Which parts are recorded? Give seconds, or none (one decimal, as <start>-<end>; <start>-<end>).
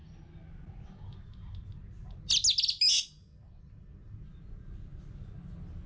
0.0-5.9